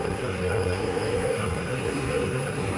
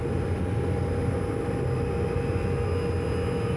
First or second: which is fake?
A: first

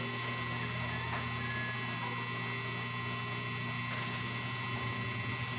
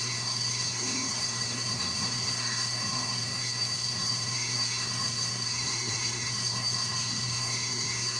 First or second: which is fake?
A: second